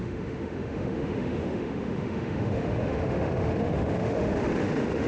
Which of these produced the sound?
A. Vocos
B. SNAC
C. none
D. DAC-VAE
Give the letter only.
D